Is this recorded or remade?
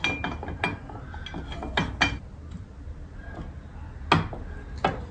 recorded